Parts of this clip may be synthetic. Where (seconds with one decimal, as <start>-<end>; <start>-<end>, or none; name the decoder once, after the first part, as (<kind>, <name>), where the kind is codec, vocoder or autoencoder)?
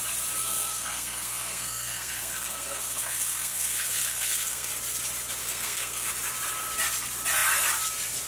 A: 0.4-4.7 (codec, SNAC); 5.4-6.1